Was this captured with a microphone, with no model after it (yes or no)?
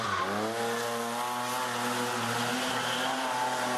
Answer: yes